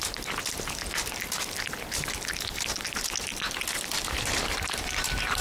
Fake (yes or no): no